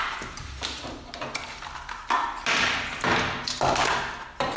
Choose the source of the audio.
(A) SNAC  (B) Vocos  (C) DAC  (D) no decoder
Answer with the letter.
D